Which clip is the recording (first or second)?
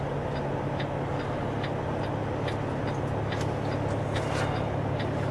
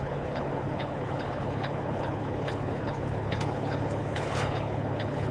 first